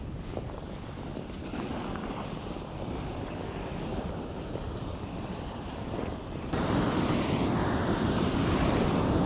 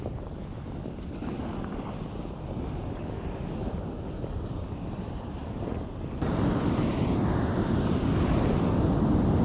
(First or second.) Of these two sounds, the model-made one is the first